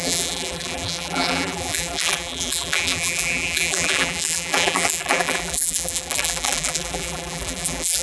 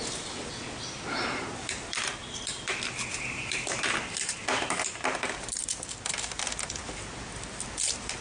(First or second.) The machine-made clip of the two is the first